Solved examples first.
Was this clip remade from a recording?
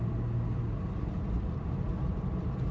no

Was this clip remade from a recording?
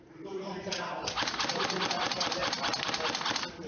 no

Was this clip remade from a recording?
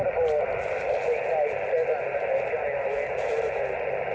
no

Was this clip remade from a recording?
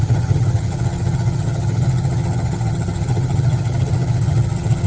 yes